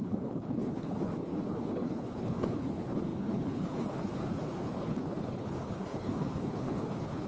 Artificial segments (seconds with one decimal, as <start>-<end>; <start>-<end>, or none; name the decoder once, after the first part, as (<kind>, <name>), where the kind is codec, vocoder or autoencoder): 0.0-7.3 (codec, HILCodec)